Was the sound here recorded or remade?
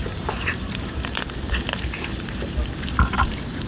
remade